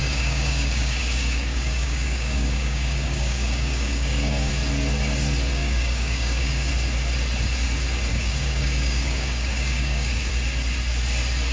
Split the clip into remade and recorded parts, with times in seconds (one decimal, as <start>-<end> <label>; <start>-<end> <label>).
0.0-4.5 remade; 4.5-5.6 recorded; 5.6-6.7 remade; 6.7-8.1 recorded; 8.1-10.3 remade; 10.3-11.5 recorded